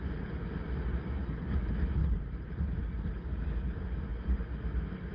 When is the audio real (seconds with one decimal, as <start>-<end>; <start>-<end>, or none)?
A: 0.0-2.0; 2.8-4.1; 4.6-5.1